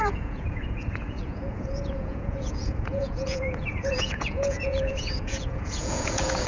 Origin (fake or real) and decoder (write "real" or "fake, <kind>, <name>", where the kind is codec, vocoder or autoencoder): fake, vocoder, Vocos